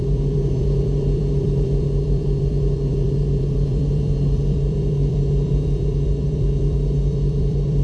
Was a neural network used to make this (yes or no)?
yes